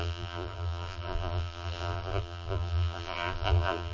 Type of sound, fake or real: fake